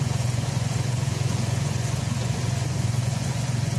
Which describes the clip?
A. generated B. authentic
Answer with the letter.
A